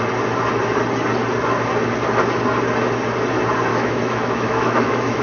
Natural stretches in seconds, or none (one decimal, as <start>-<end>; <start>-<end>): 0.0-3.7